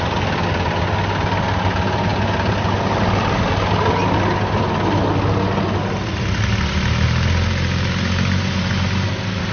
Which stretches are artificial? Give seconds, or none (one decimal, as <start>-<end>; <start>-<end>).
none